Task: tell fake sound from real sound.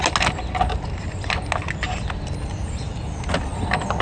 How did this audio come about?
real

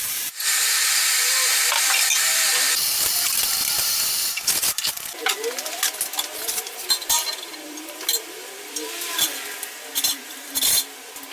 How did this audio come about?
fake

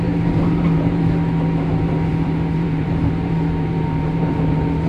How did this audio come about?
fake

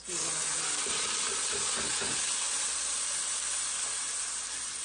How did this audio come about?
real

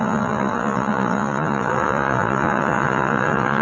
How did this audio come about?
fake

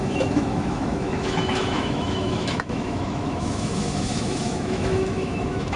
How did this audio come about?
fake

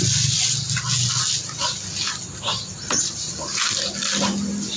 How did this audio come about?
real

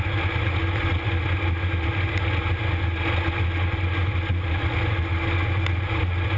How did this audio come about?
real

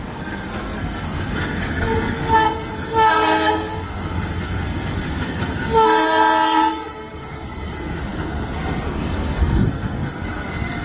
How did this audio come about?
fake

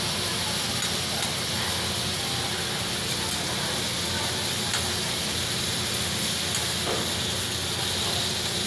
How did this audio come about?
real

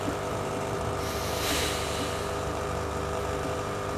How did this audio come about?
fake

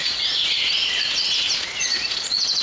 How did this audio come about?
fake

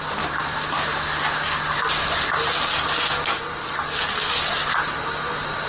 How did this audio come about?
real